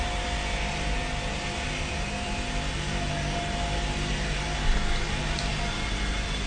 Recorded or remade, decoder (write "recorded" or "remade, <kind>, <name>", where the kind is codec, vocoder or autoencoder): recorded